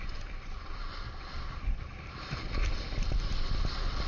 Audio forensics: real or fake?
real